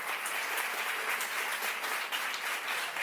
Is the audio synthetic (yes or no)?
no